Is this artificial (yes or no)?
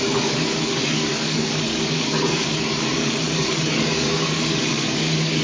yes